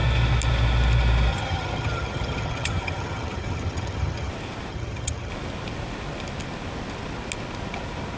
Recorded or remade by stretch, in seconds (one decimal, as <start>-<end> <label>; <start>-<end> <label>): 0.0-1.3 recorded; 1.3-4.3 remade; 4.3-4.7 recorded; 4.7-5.3 remade; 5.3-8.2 recorded